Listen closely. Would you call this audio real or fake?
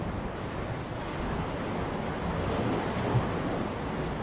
real